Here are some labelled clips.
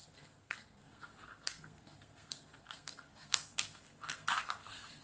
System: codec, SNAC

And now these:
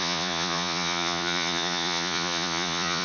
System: vocoder, Vocos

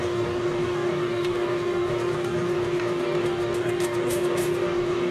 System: codec, DAC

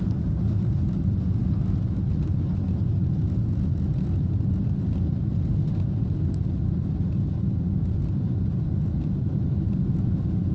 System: none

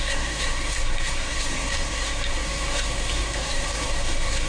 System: codec, SNAC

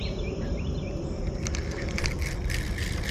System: none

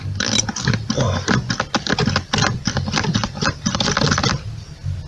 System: none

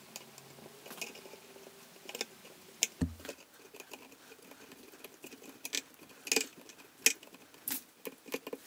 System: none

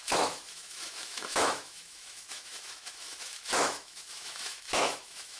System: autoencoder, DAC-VAE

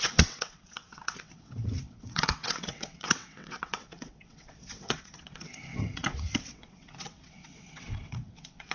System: vocoder, WaveNeXt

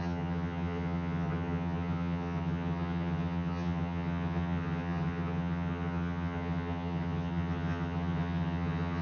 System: vocoder, HiFi-GAN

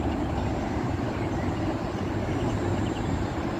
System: none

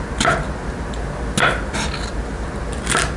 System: none